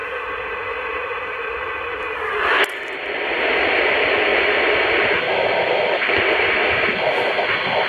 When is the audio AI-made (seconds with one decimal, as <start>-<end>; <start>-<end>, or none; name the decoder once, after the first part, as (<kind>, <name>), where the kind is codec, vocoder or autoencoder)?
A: none